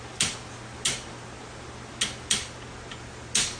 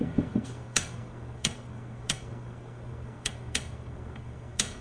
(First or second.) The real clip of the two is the first